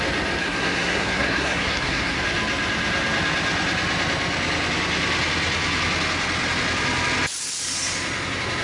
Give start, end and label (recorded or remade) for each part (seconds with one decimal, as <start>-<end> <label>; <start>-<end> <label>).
0.0-0.4 recorded; 0.4-2.2 remade; 2.2-8.6 recorded